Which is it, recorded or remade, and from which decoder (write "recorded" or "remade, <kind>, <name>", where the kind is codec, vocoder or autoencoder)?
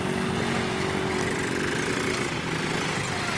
recorded